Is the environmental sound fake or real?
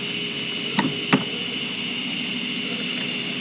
real